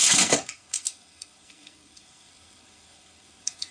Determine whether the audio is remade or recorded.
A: remade